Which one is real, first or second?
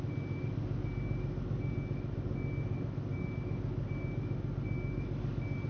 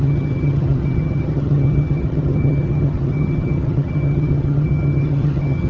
first